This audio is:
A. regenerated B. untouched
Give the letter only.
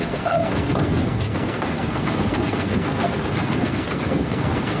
A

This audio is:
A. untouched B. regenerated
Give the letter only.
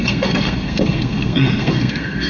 B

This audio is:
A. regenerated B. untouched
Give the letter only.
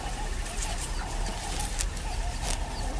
B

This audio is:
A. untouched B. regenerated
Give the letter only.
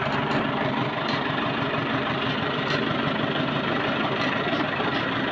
B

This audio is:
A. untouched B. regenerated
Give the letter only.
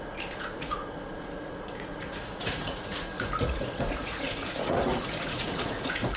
B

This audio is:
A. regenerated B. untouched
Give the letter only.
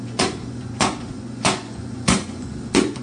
A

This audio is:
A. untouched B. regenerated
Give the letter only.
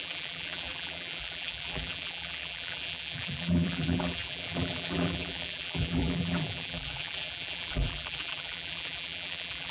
B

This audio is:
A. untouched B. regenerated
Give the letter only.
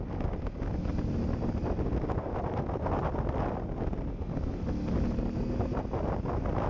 A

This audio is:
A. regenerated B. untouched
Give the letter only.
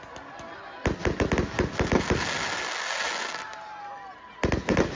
B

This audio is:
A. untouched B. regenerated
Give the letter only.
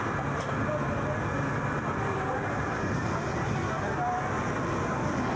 A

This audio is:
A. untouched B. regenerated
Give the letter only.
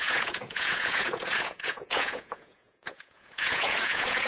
B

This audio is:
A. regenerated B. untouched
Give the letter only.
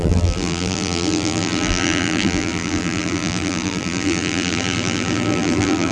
A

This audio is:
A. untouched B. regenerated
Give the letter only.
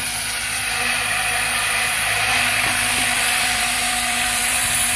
B